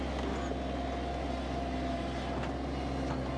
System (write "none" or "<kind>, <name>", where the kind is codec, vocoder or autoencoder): none